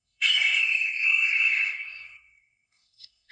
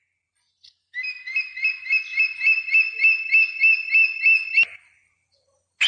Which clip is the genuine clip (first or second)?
second